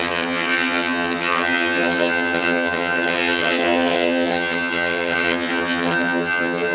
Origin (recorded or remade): remade